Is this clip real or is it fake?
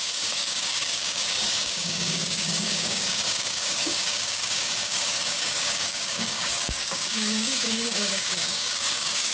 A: fake